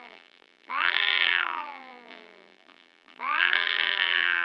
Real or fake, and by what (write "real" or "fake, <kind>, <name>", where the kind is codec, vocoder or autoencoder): fake, vocoder, BigVGAN v2